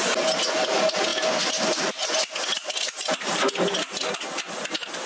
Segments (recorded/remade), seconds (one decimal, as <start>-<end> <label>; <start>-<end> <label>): 0.0-5.1 recorded